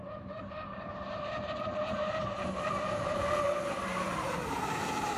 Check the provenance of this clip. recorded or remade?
remade